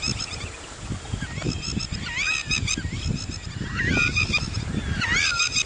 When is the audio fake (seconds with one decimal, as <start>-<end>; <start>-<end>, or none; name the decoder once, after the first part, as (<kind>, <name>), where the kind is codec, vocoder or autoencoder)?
none